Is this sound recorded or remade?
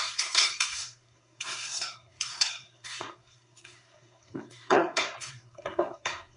remade